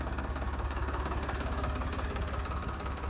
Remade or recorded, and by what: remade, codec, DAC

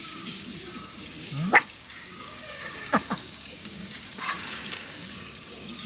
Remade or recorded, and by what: remade, codec, DAC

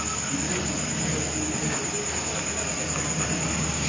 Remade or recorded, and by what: recorded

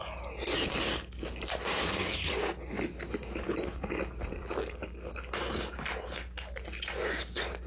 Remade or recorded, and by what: recorded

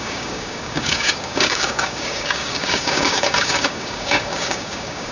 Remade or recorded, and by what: remade, codec, DAC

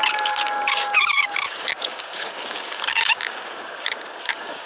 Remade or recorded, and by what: remade, codec, DAC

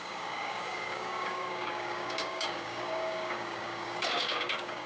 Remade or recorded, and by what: remade, codec, DAC